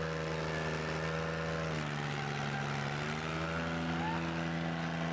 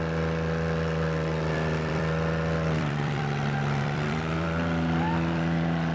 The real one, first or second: first